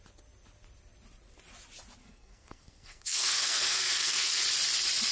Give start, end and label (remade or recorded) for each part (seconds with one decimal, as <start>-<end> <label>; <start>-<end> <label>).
0.0-2.0 recorded; 2.0-4.4 remade; 4.4-5.1 recorded